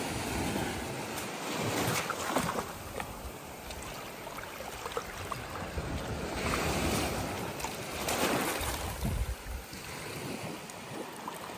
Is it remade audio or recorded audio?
recorded